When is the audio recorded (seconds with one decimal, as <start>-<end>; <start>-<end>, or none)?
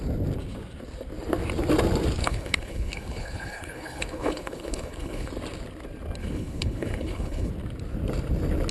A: 0.0-2.2; 5.3-6.2; 7.5-8.7